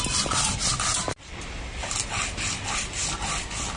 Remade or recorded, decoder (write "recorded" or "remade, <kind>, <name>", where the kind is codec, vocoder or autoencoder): recorded